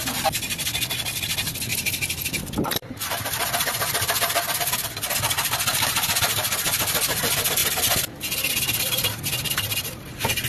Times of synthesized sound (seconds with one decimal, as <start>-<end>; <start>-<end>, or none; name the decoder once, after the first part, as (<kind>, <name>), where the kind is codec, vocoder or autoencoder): none